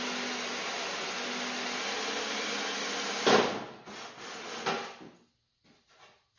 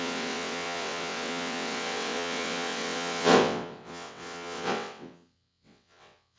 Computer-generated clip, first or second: second